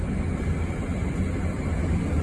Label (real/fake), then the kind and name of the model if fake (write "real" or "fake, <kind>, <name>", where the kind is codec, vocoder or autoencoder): real